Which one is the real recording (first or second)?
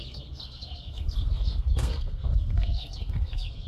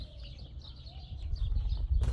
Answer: second